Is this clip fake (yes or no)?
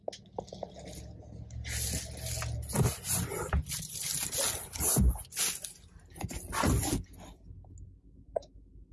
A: no